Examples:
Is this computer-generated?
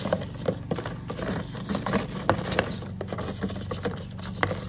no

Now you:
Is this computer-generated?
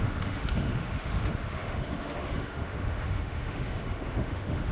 yes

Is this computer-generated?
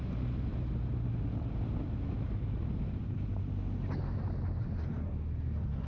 no